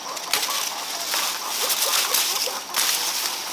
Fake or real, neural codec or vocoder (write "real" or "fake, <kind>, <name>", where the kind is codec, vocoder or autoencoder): real